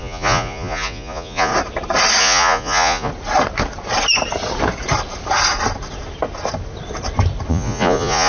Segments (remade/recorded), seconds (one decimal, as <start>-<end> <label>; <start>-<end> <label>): 0.0-1.5 remade; 1.5-2.2 recorded; 2.2-3.1 remade; 3.1-7.5 recorded; 7.5-8.3 remade